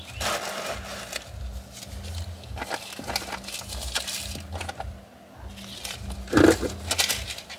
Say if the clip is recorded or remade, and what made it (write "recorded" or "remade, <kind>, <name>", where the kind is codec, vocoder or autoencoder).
recorded